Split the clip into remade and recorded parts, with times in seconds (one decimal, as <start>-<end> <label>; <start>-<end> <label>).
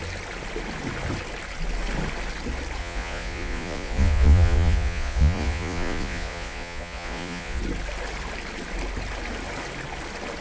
0.0-2.8 recorded; 2.8-7.6 remade; 7.6-10.4 recorded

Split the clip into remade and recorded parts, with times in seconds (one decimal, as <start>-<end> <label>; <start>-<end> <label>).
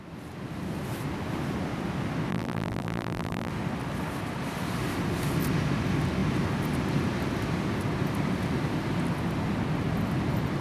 0.0-2.3 recorded; 2.3-3.5 remade; 3.5-10.6 recorded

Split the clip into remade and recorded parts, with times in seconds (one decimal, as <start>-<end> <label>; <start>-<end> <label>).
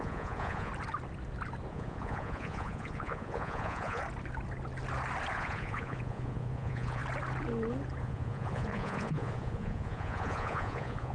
0.0-0.7 remade; 0.7-1.7 recorded; 1.7-4.0 remade; 4.0-5.3 recorded; 5.3-7.0 remade; 7.0-8.0 recorded; 8.0-11.1 remade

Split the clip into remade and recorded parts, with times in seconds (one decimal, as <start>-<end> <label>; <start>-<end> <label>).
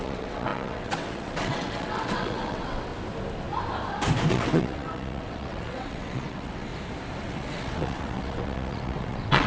0.0-2.9 remade; 2.9-4.3 recorded; 4.3-6.7 remade; 6.7-7.2 recorded; 7.2-9.5 remade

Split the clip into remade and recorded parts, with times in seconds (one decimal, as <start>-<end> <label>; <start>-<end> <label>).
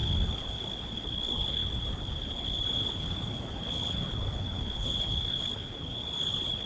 0.0-6.7 remade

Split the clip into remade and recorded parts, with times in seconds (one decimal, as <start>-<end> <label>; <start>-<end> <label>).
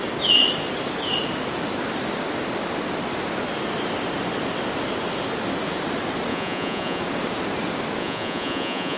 0.0-6.3 recorded; 6.3-7.0 remade; 7.0-8.0 recorded; 8.0-9.0 remade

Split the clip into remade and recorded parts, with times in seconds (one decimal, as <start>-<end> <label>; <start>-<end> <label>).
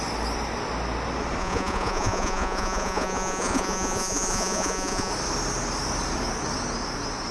0.0-1.4 recorded; 1.4-5.1 remade; 5.1-7.3 recorded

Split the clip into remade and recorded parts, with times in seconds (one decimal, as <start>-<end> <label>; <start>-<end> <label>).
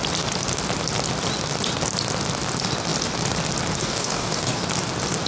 0.0-3.8 recorded; 3.8-4.6 remade; 4.6-5.3 recorded